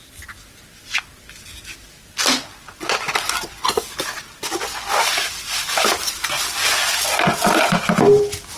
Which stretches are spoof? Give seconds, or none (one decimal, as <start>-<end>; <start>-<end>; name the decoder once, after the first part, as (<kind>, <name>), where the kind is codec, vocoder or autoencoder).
none